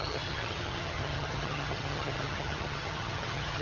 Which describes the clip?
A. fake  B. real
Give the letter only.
A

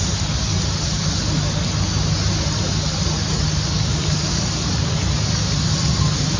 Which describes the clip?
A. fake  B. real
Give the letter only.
B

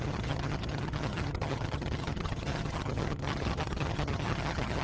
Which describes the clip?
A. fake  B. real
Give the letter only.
A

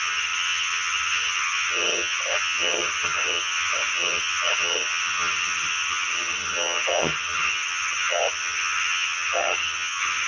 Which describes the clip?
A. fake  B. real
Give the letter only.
A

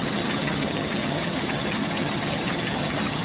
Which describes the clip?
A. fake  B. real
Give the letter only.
A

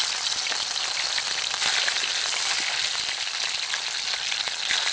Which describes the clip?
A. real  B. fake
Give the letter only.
A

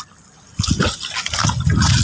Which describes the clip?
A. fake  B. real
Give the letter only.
B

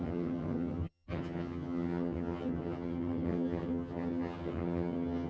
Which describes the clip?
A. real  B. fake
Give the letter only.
B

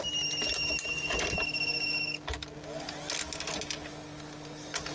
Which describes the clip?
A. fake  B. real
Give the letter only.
B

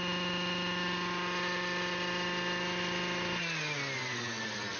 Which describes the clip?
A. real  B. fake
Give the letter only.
A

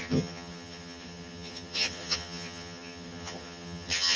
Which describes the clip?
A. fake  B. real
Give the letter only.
A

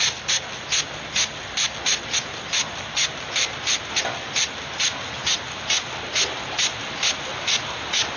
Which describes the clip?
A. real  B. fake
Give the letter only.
A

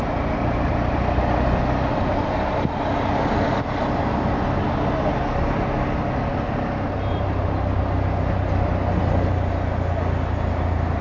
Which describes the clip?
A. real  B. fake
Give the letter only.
A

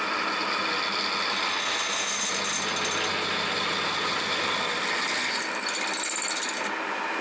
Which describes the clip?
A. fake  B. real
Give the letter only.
B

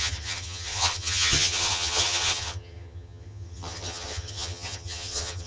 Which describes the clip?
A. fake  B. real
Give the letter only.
A